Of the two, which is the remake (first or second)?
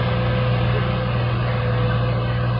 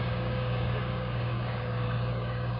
second